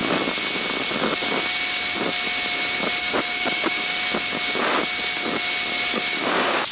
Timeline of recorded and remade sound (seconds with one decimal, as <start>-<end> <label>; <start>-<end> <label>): 0.0-3.0 recorded; 3.0-3.9 remade; 3.9-5.9 recorded; 5.9-6.7 remade